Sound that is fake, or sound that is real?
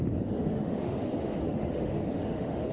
fake